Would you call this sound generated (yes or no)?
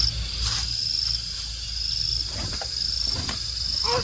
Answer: no